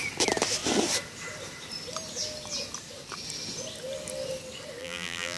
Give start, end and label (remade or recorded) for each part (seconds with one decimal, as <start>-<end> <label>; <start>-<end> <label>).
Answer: 0.0-4.8 recorded; 4.8-5.4 remade